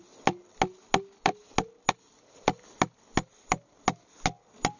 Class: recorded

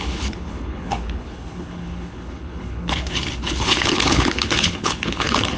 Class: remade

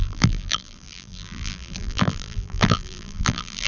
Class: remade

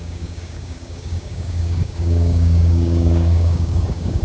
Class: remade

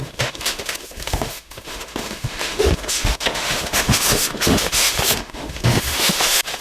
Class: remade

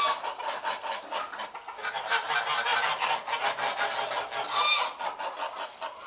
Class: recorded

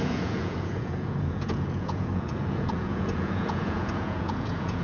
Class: remade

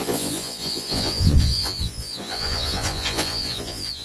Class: remade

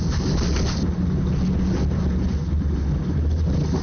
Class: recorded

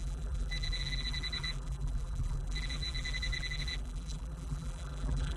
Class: remade